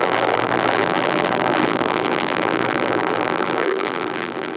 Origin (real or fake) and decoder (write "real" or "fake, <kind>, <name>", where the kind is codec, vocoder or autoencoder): fake, vocoder, BigVGAN v2